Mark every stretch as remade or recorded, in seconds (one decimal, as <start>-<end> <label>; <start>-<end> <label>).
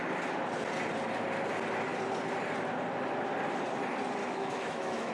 0.0-4.2 recorded; 4.2-5.1 remade